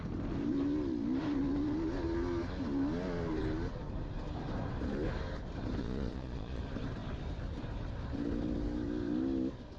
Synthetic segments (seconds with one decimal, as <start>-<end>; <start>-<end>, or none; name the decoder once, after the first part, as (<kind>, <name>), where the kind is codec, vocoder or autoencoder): 5.8-6.6 (vocoder, Vocos)